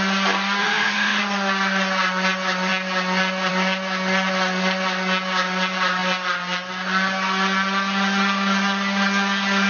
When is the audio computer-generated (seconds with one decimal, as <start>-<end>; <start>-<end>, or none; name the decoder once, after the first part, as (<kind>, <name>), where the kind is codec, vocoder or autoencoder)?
0.6-1.2 (autoencoder, DAC-VAE)